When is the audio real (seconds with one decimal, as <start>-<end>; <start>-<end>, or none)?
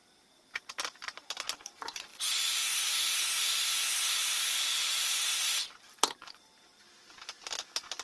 0.0-8.0